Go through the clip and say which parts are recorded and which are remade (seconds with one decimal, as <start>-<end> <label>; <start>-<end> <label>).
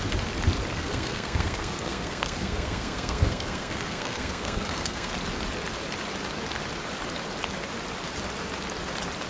0.0-0.7 recorded; 0.7-5.1 remade; 5.1-9.3 recorded